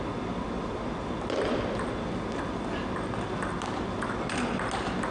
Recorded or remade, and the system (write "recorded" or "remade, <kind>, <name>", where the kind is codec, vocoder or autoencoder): recorded